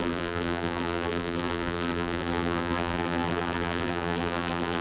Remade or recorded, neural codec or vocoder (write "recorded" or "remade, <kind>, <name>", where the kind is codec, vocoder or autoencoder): remade, vocoder, BigVGAN v2